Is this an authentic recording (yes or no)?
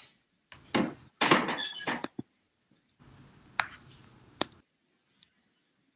yes